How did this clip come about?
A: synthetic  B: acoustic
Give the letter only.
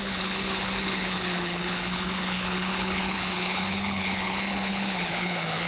A